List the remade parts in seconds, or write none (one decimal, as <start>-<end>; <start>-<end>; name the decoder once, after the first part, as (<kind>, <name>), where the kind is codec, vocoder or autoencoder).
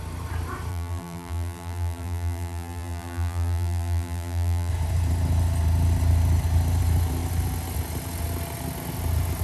0.7-4.7 (vocoder, BigVGAN v2)